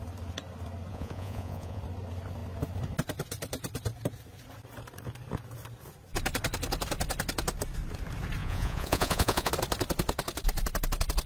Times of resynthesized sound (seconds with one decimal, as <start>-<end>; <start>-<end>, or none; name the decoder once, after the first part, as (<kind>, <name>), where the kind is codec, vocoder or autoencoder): 0.9-1.8 (vocoder, Vocos); 8.4-9.5